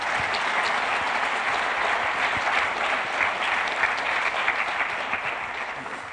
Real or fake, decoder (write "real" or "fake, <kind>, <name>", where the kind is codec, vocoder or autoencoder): real